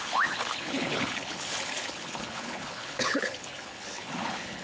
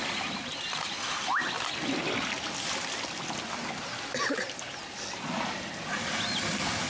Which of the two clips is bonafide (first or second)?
second